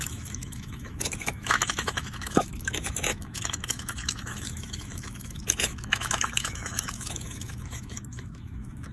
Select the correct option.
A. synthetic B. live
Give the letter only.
A